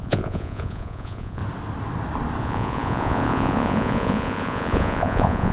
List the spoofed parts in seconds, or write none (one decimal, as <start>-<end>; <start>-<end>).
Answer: 0.0-1.4; 2.4-5.5